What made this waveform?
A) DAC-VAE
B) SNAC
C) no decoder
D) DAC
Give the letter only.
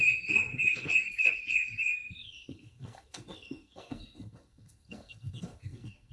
B